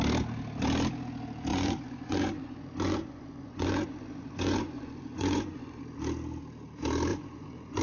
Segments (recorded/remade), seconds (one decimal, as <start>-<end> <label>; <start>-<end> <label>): 0.0-1.5 recorded; 1.5-5.8 remade; 5.8-7.1 recorded; 7.1-7.8 remade